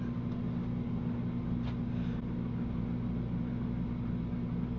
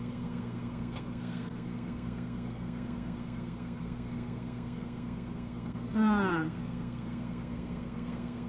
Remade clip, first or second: second